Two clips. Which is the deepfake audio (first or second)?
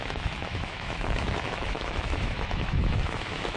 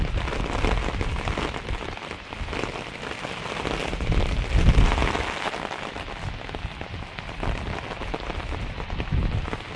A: first